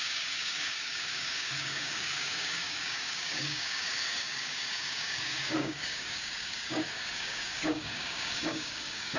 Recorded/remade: remade